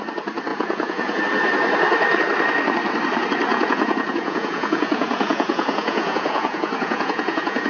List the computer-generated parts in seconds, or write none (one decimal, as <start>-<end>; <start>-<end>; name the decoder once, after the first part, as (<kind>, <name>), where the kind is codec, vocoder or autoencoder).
0.5-1.2 (vocoder, Vocos); 3.5-7.7